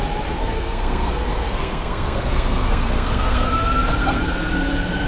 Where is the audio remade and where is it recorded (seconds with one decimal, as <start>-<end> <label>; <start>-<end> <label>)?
0.0-0.4 recorded; 0.4-3.5 remade; 3.5-4.0 recorded; 4.0-4.5 remade; 4.5-5.1 recorded